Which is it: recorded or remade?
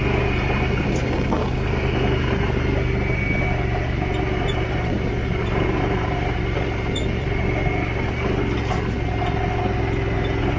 recorded